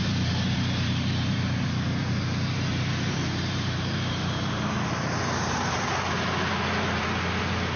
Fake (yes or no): yes